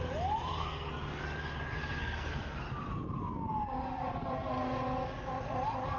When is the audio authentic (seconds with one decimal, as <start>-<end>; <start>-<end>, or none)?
0.0-0.5; 1.2-1.8; 2.6-6.0